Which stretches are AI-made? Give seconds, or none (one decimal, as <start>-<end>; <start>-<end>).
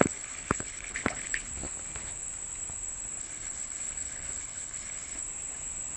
0.0-1.5; 3.2-5.2